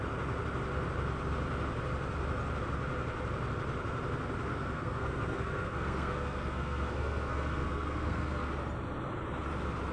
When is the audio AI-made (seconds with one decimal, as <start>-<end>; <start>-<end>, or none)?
4.5-8.5